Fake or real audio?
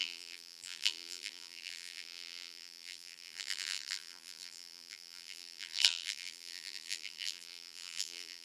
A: fake